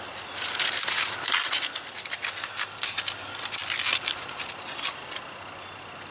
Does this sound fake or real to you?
real